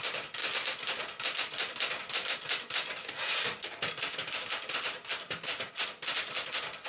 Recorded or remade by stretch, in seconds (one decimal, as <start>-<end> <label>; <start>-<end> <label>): 0.0-4.2 recorded; 4.2-5.7 remade; 5.7-6.9 recorded